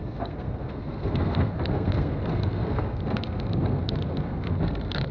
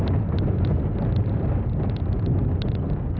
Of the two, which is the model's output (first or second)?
first